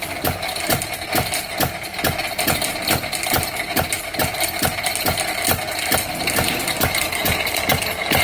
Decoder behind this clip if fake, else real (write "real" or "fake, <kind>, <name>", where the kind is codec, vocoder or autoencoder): real